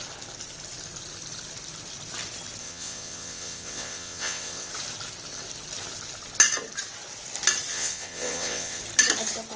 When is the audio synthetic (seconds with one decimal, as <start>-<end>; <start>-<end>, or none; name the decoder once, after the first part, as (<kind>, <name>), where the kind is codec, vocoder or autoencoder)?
2.6-4.7 (vocoder, WaveNeXt); 7.7-8.8